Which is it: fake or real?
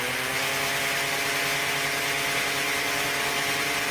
real